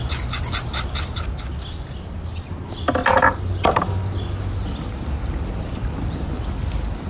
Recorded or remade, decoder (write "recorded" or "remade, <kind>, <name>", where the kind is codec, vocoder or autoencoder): recorded